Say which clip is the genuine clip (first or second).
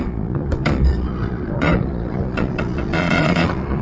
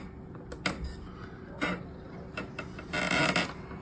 second